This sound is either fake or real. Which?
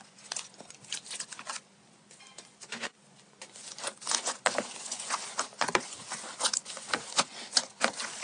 fake